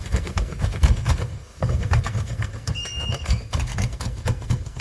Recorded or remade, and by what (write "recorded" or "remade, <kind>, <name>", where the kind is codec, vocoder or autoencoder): remade, codec, SNAC